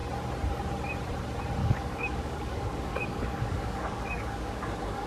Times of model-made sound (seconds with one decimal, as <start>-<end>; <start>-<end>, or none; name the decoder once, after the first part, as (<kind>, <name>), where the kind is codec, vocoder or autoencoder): 1.6-5.1 (codec, DAC)